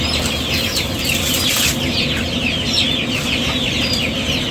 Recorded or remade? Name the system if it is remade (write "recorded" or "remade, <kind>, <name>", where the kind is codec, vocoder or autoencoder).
recorded